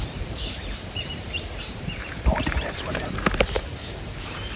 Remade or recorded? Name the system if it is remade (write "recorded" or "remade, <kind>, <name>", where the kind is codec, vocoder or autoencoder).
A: remade, vocoder, BigVGAN v2